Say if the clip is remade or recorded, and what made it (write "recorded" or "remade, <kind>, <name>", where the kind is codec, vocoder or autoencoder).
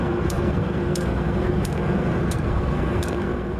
remade, codec, SNAC